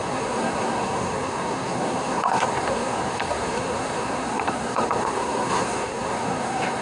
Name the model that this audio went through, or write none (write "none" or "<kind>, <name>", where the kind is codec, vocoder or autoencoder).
codec, SNAC